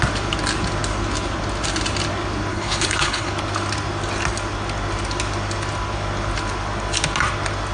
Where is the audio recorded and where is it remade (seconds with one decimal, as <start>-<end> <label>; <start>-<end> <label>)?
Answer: 0.0-2.5 recorded; 2.5-3.3 remade; 3.3-7.7 recorded

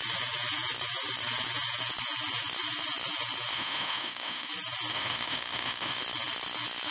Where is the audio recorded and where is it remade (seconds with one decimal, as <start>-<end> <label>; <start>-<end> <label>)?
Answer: 0.0-3.5 recorded; 3.5-4.5 remade; 4.5-4.9 recorded; 4.9-6.0 remade; 6.0-6.9 recorded

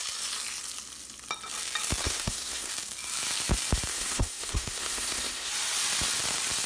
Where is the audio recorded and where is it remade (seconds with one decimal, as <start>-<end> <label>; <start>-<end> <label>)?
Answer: 0.0-2.0 recorded; 2.0-2.7 remade; 2.7-3.9 recorded; 3.9-5.5 remade; 5.5-6.7 recorded

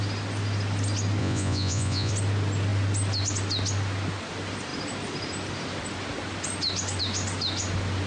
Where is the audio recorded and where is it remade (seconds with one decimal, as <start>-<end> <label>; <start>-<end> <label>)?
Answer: 0.0-1.2 recorded; 1.2-2.1 remade; 2.1-8.1 recorded

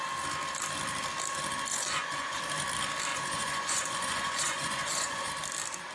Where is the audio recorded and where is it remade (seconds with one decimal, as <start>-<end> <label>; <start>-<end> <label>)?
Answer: 0.0-1.7 recorded; 1.7-2.4 remade; 2.4-3.1 recorded; 3.1-5.3 remade; 5.3-5.9 recorded